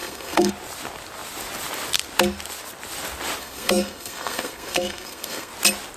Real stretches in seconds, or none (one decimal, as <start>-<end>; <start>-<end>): 0.5-3.4; 5.5-6.0